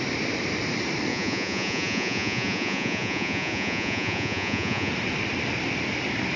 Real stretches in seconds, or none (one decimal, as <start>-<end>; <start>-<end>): 0.0-1.1; 4.9-6.4